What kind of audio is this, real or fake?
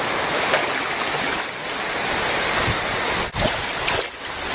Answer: real